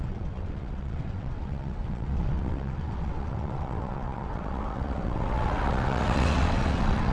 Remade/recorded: remade